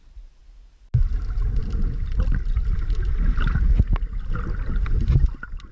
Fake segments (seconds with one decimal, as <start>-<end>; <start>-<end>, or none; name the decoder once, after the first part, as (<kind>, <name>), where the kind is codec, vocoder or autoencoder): none